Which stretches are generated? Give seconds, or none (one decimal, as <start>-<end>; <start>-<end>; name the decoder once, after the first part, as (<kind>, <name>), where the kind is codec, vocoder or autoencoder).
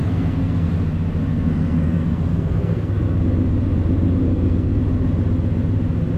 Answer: 0.0-0.7 (codec, SNAC); 1.3-3.2; 4.3-4.8